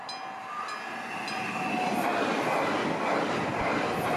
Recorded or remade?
recorded